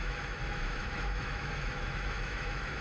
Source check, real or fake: fake